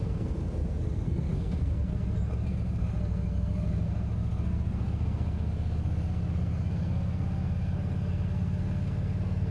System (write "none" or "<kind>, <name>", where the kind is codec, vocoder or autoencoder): codec, SNAC